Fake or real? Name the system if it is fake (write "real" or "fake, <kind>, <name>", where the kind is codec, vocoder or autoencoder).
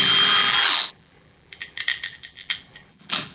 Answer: fake, vocoder, BigVGAN v2